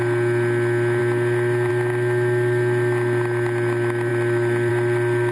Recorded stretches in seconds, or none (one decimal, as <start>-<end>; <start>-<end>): 0.0-5.3